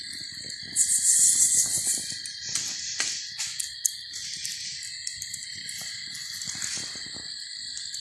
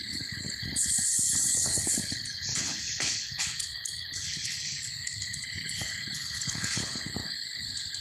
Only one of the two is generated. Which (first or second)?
second